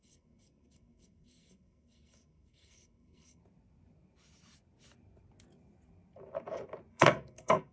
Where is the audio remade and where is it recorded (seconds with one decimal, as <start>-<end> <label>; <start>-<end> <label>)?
0.0-3.4 remade; 3.4-6.9 recorded; 6.9-7.7 remade